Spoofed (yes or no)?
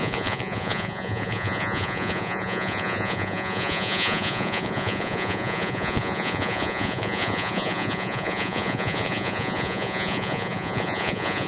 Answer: yes